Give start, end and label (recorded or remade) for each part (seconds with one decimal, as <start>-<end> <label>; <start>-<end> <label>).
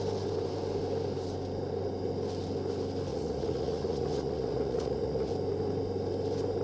0.0-3.1 recorded; 3.1-5.3 remade; 5.3-6.6 recorded